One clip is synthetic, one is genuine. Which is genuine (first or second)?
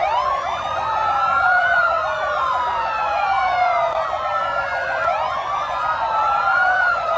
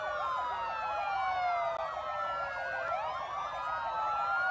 second